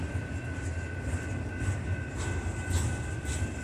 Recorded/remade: recorded